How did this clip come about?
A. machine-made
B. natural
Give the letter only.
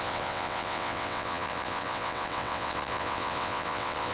A